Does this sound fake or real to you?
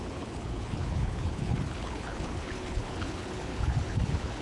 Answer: fake